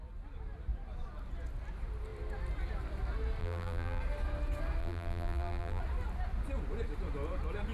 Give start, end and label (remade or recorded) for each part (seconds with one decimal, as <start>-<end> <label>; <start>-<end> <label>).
0.0-3.4 recorded; 3.4-4.0 remade; 4.0-4.8 recorded; 4.8-5.8 remade; 5.8-7.7 recorded